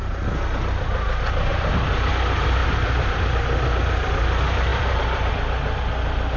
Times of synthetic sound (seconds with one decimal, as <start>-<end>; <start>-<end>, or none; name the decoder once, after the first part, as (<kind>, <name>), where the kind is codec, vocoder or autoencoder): 1.5-2.1 (vocoder, BigVGAN v2); 2.6-3.2; 4.7-5.3